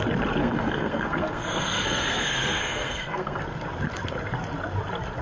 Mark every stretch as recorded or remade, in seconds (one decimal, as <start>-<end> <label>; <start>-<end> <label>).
0.0-0.4 recorded; 0.4-3.4 remade; 3.4-5.2 recorded